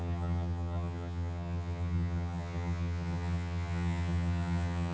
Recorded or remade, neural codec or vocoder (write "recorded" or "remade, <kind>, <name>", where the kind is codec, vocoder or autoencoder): remade, vocoder, HiFi-GAN